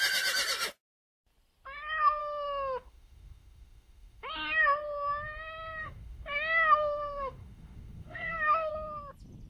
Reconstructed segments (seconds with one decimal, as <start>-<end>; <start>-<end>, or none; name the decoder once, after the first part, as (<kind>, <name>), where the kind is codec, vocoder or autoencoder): 2.2-4.3 (autoencoder, DAC-VAE); 5.8-8.7